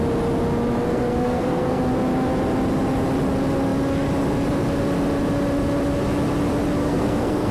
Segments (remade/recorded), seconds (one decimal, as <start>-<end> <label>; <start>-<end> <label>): 0.0-0.9 recorded; 0.9-1.8 remade; 1.8-6.8 recorded; 6.8-7.5 remade